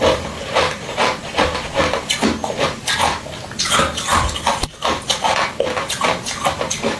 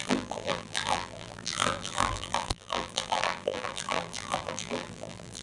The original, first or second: first